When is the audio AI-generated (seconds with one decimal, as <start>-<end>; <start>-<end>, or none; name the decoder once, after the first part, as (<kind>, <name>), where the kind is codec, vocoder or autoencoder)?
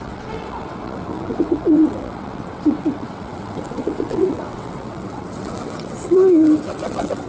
0.0-7.3 (vocoder, WaveNeXt)